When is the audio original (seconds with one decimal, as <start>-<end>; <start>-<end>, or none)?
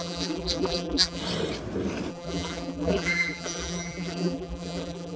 1.2-2.1